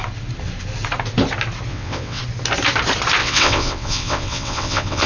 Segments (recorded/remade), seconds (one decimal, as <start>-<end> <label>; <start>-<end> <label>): 0.0-1.7 recorded; 1.7-2.2 remade; 2.2-3.2 recorded; 3.2-5.1 remade

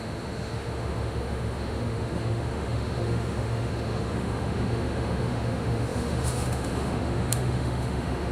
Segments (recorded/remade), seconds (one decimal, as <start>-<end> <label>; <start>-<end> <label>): 0.0-8.3 remade

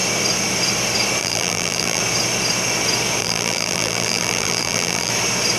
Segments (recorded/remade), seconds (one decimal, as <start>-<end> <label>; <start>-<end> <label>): 0.0-1.2 recorded; 1.2-2.0 remade; 2.0-3.2 recorded; 3.2-5.1 remade; 5.1-5.6 recorded

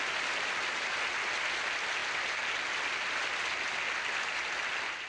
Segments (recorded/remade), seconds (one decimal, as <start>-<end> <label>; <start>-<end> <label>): 0.0-5.1 recorded

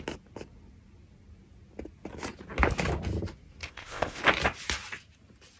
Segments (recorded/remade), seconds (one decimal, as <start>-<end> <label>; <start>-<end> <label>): 0.0-3.6 recorded; 3.6-4.2 remade; 4.2-5.6 recorded

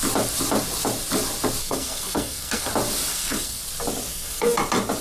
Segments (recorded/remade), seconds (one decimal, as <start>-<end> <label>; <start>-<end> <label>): 0.0-1.6 recorded; 1.6-2.7 remade; 2.7-3.1 recorded; 3.1-3.6 remade; 3.6-4.1 recorded; 4.1-4.6 remade; 4.6-5.0 recorded

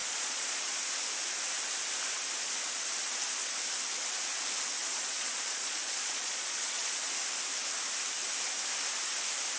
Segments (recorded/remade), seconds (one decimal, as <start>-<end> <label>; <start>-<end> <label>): 0.0-0.8 remade; 0.8-4.8 recorded; 4.8-7.0 remade; 7.0-9.6 recorded